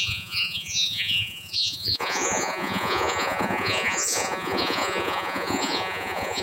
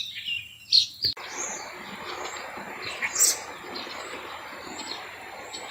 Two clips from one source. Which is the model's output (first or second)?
first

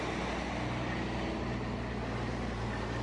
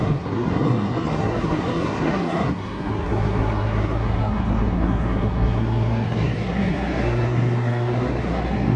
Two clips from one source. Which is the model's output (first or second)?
second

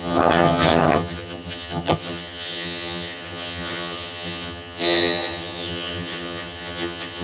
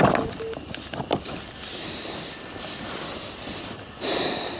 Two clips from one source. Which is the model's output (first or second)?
first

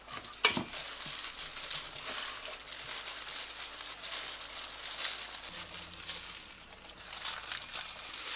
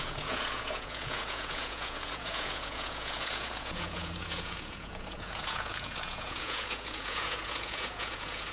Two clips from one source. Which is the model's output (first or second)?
second